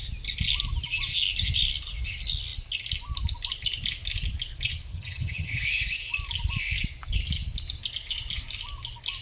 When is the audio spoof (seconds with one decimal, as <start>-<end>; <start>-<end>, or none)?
4.9-5.6